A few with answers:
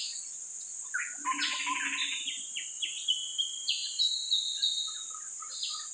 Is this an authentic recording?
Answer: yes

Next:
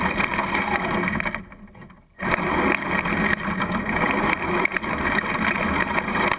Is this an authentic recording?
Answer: yes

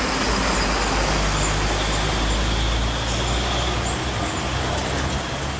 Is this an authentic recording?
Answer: yes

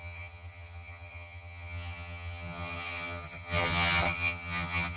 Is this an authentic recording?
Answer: no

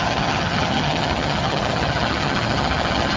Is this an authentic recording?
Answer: no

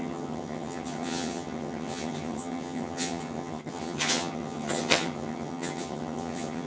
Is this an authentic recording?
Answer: no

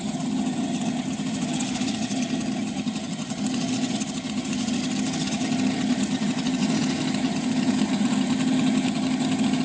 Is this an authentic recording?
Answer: no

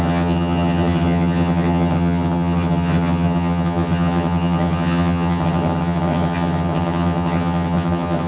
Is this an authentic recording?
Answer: no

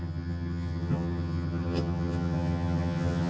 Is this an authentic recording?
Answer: no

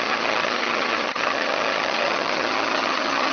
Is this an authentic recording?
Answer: no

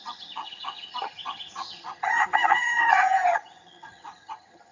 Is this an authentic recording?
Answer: no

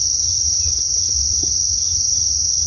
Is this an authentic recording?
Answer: yes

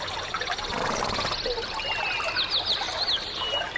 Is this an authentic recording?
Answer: yes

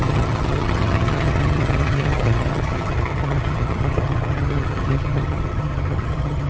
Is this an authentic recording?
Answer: no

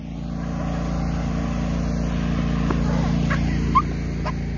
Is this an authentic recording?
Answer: yes